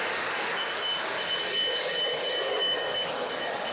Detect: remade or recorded remade